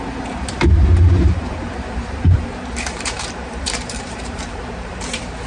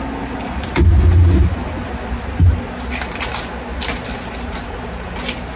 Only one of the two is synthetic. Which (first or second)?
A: first